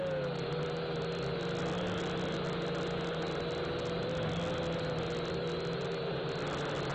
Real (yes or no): yes